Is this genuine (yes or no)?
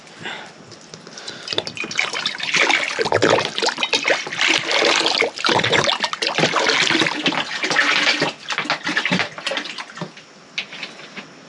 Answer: yes